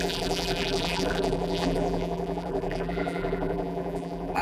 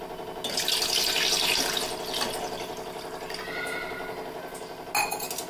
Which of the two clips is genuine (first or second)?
second